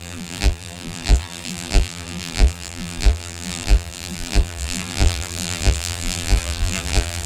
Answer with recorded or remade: remade